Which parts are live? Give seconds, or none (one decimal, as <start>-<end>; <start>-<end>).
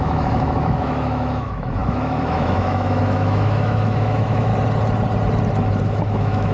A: 4.5-5.8